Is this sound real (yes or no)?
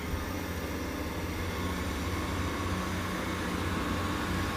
yes